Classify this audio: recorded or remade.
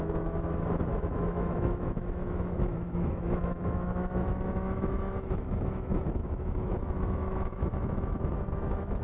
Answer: remade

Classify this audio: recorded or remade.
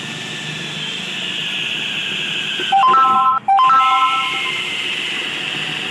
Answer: recorded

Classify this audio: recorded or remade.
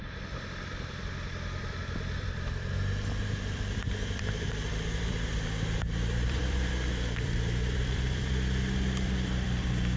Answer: remade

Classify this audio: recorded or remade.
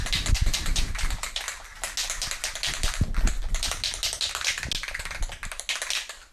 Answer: recorded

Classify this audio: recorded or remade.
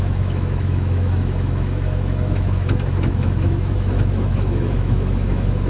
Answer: remade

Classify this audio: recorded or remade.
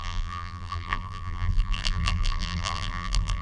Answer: remade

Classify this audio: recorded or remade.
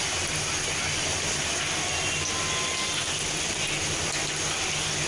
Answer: recorded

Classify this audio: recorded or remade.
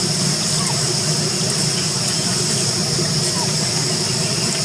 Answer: recorded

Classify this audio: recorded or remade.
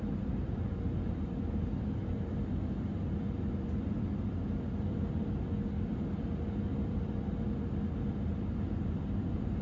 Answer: recorded